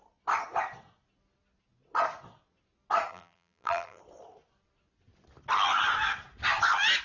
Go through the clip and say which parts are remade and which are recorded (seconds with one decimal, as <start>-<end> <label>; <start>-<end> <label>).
0.0-3.1 recorded; 3.1-4.0 remade; 4.0-7.0 recorded